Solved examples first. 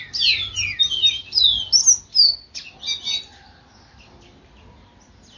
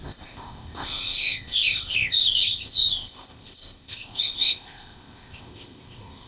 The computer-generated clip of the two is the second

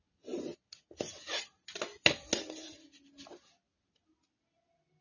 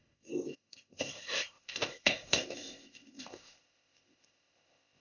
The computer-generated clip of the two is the second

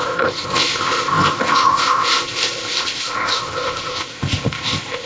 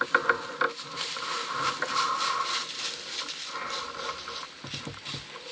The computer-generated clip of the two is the first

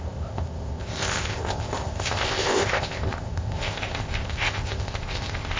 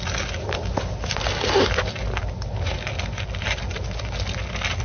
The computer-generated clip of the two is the first